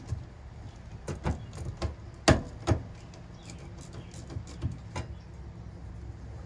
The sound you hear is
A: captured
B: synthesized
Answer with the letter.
A